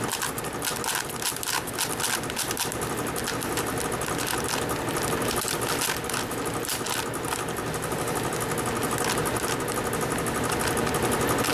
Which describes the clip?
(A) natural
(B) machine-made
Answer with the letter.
A